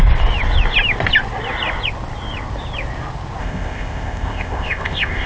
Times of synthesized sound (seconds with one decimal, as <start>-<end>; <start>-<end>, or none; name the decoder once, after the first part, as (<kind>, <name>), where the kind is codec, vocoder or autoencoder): 3.4-5.3 (codec, ZipCodec)